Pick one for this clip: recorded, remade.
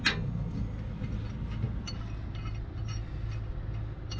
recorded